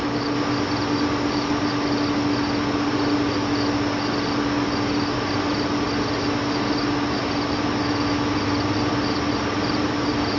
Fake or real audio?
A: real